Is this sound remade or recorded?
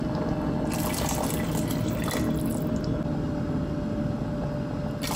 recorded